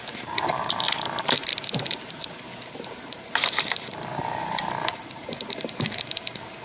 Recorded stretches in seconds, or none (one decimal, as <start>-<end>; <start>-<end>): 1.5-2.1